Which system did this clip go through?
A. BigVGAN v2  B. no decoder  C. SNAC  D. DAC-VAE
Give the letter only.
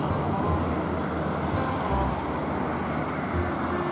B